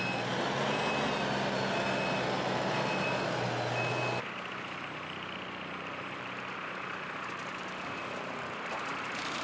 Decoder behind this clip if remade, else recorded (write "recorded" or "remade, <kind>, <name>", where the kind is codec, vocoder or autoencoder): recorded